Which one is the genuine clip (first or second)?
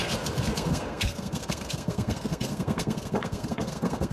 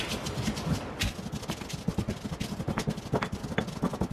second